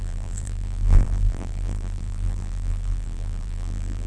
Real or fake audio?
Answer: fake